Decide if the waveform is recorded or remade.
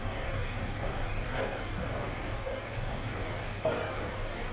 remade